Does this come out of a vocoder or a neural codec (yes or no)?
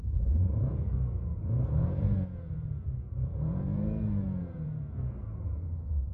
yes